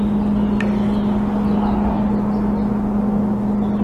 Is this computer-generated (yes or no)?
no